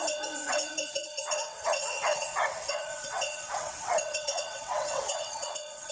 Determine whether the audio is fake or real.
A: fake